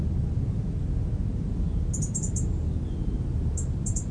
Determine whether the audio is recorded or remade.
recorded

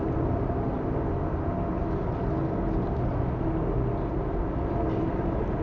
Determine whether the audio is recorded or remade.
recorded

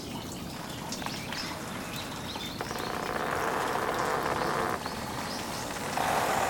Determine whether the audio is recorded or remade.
recorded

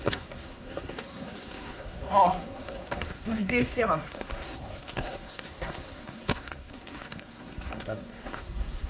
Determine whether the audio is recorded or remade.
remade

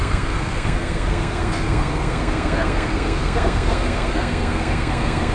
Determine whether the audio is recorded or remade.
remade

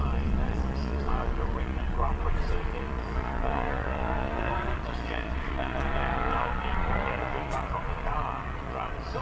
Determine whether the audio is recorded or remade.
remade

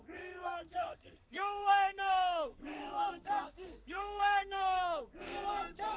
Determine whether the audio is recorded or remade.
remade